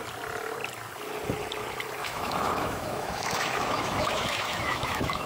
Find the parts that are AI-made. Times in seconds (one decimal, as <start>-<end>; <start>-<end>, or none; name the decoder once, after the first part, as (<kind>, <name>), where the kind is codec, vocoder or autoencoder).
2.0-5.3 (autoencoder, DAC-VAE)